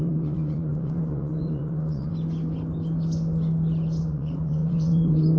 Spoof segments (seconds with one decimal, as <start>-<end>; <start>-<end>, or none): 0.0-2.1; 4.0-5.4